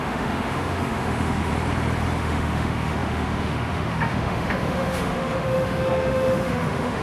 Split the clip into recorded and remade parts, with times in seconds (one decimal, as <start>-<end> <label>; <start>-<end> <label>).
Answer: 0.0-1.5 remade; 1.5-2.2 recorded; 2.2-7.0 remade